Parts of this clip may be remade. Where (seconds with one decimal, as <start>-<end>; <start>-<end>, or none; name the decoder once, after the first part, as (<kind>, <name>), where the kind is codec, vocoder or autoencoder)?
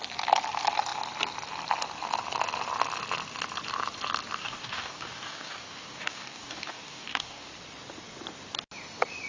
4.4-7.5 (codec, DAC)